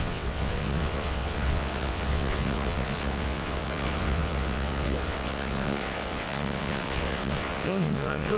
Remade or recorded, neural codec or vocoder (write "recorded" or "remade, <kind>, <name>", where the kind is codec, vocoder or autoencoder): remade, vocoder, WaveNeXt